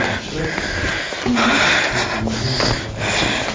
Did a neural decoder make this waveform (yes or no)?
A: no